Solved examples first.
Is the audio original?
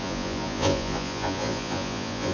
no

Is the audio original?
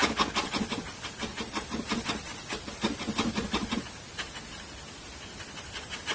yes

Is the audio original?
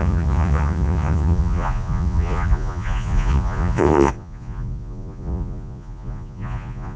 no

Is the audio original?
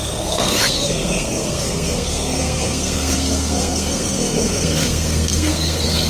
no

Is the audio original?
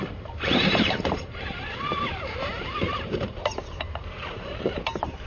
no